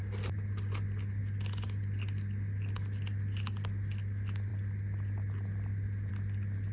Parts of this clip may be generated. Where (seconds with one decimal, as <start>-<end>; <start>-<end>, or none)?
none